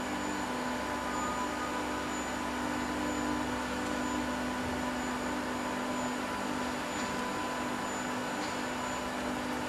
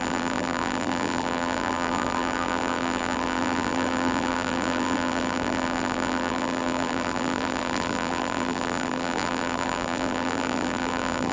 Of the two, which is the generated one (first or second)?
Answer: second